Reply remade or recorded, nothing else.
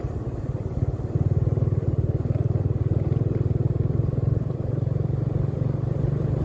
recorded